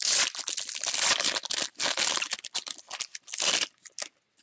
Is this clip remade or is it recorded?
recorded